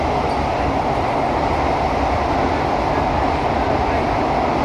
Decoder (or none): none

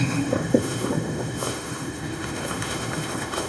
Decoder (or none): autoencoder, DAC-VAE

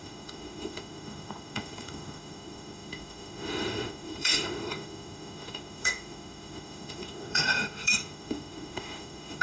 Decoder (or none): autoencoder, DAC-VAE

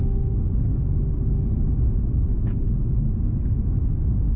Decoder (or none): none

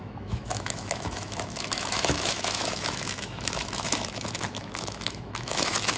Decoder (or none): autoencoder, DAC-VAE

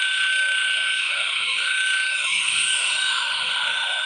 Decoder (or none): autoencoder, DAC-VAE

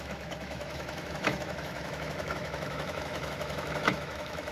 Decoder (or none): autoencoder, DAC-VAE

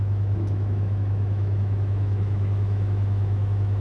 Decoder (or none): autoencoder, DAC-VAE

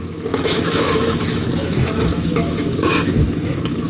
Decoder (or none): autoencoder, DAC-VAE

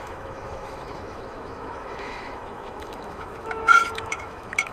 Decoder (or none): autoencoder, DAC-VAE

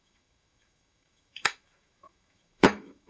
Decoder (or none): autoencoder, DAC-VAE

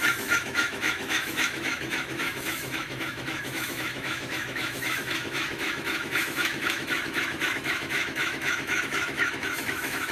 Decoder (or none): autoencoder, DAC-VAE